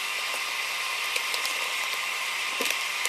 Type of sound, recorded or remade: remade